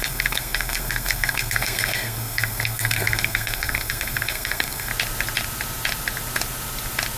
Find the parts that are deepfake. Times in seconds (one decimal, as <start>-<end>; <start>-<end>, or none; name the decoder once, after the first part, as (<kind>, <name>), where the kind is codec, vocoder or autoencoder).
0.0-4.9 (codec, SNAC)